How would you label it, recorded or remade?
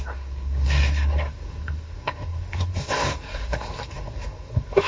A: remade